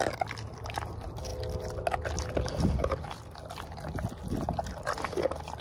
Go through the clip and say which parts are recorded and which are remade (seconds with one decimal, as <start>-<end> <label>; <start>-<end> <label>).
0.0-5.6 recorded